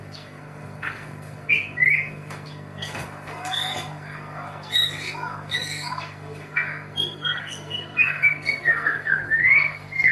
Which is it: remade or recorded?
remade